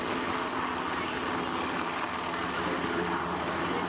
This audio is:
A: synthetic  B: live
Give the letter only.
B